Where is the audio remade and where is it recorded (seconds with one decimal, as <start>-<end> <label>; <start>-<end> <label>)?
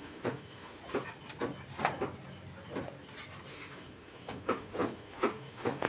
0.0-0.8 remade; 0.8-3.5 recorded; 3.5-5.9 remade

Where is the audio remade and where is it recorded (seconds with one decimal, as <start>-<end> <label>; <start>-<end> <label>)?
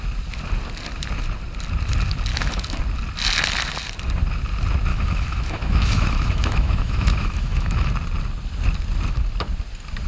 0.0-2.3 recorded; 2.3-2.8 remade; 2.8-4.9 recorded; 4.9-7.9 remade; 7.9-10.1 recorded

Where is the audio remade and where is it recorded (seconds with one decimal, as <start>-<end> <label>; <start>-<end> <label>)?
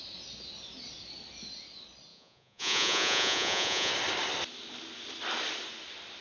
0.0-2.1 recorded; 2.1-3.9 remade; 3.9-6.2 recorded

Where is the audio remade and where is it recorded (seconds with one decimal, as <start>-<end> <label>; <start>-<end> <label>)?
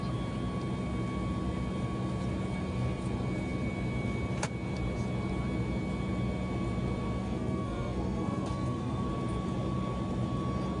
0.0-7.2 recorded; 7.2-9.1 remade; 9.1-10.8 recorded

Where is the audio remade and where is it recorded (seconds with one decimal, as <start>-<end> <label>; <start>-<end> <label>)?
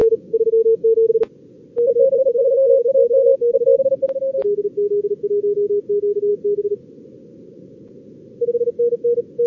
0.0-1.1 remade; 1.1-2.2 recorded; 2.2-4.0 remade; 4.0-9.5 recorded